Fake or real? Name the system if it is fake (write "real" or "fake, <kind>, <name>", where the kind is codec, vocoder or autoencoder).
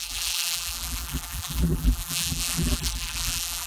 fake, vocoder, BigVGAN v2